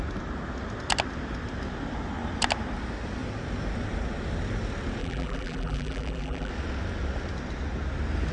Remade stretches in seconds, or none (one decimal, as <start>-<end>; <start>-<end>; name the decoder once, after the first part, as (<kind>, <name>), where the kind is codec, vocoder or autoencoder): 5.0-6.5 (vocoder, BigVGAN v2)